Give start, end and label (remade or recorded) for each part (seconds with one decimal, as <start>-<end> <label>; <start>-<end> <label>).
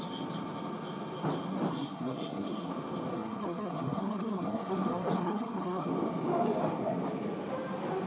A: 0.0-1.7 recorded; 1.7-2.7 remade; 2.7-3.1 recorded; 3.1-5.9 remade; 5.9-8.1 recorded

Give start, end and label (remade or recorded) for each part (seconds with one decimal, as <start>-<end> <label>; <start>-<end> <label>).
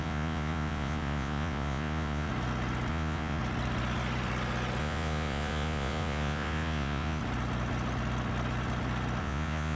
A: 0.0-2.3 remade; 2.3-2.9 recorded; 2.9-3.4 remade; 3.4-4.8 recorded; 4.8-7.2 remade; 7.2-9.2 recorded; 9.2-9.8 remade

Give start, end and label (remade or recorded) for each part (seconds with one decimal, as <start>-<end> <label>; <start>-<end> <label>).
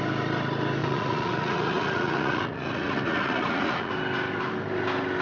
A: 0.0-0.8 recorded; 0.8-3.9 remade; 3.9-5.2 recorded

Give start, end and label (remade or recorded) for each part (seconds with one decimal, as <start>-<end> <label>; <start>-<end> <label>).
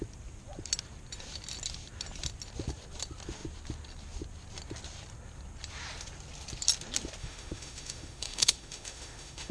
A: 0.0-7.2 recorded; 7.2-9.5 remade